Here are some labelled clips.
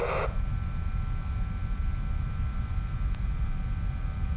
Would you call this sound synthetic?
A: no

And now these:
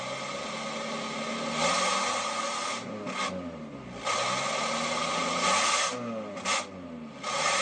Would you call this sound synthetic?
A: no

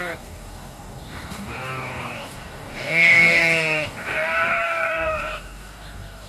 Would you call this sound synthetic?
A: yes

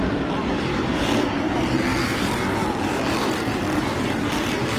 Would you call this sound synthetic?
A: yes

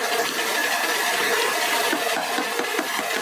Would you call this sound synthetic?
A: no